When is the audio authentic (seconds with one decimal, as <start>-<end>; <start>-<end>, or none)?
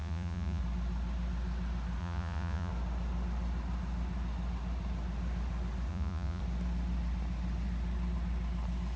0.6-2.0; 2.7-5.9; 6.4-9.0